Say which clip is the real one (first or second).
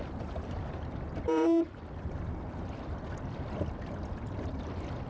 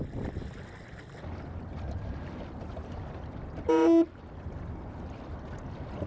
second